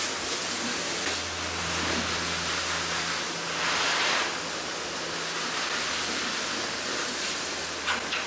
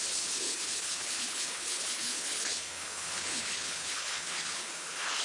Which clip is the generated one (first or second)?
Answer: second